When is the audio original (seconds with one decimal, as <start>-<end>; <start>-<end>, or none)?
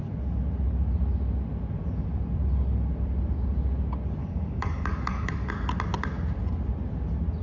0.0-4.2; 5.5-7.4